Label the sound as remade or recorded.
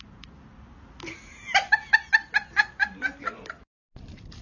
recorded